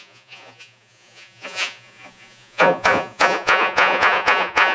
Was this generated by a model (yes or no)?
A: yes